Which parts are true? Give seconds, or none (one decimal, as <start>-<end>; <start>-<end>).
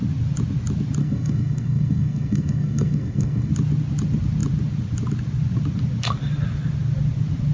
0.0-1.0; 3.5-7.5